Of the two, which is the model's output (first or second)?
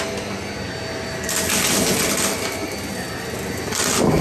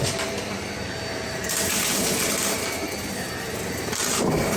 second